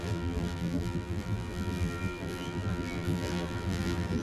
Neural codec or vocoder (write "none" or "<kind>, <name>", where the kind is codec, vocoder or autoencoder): vocoder, BigVGAN v2